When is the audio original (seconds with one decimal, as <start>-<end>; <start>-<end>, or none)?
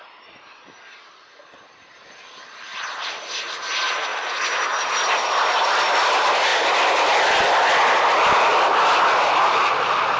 0.0-10.2